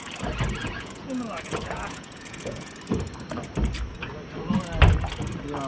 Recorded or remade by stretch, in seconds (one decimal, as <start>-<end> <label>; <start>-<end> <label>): 0.0-0.6 recorded; 0.6-2.7 remade; 2.7-5.7 recorded

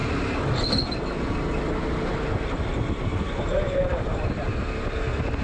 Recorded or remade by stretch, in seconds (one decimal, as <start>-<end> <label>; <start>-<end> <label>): 0.0-5.4 recorded

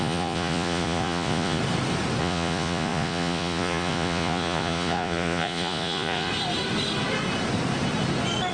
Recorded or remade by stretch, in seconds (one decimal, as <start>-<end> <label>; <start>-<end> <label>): 0.0-1.6 remade; 1.6-2.2 recorded; 2.2-6.3 remade; 6.3-8.5 recorded

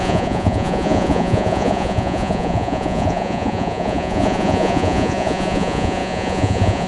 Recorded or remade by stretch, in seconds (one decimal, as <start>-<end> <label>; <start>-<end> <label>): 0.0-6.9 remade

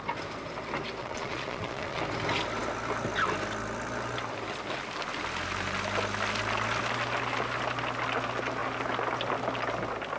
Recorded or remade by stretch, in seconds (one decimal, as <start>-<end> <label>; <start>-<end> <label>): 0.0-1.0 recorded; 1.0-2.0 remade; 2.0-10.2 recorded

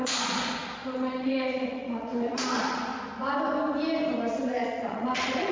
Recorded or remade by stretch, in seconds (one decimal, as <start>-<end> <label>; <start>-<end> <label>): 0.0-2.9 remade; 2.9-4.3 recorded; 4.3-5.5 remade